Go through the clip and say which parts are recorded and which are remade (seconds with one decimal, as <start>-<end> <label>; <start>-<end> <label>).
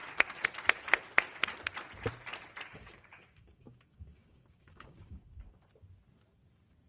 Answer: 0.0-2.7 recorded; 2.7-5.6 remade; 5.6-6.9 recorded